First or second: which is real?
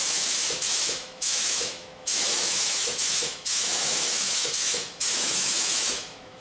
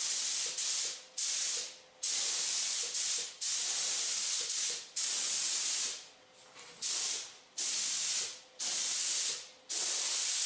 second